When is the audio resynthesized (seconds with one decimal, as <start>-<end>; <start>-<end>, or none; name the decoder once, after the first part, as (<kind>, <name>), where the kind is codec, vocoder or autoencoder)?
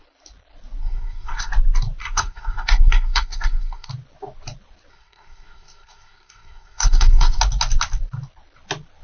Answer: 0.8-1.5 (codec, SNAC); 2.0-3.9; 4.9-7.4